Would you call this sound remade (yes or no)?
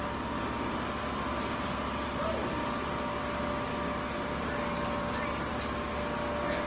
no